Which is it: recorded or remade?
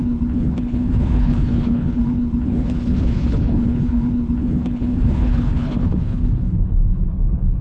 remade